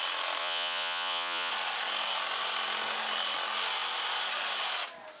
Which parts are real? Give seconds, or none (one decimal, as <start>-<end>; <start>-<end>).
0.0-0.4; 1.5-5.2